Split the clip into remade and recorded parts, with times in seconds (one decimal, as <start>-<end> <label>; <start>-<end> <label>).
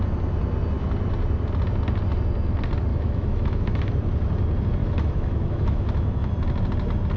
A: 0.0-2.9 recorded; 2.9-3.9 remade; 3.9-4.8 recorded; 4.8-6.3 remade; 6.3-7.2 recorded